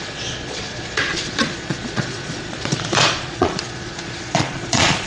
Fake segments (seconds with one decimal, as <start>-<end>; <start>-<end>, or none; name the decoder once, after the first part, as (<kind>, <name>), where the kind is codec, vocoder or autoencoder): 0.0-5.1 (vocoder, Vocos)